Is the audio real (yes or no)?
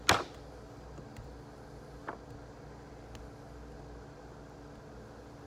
yes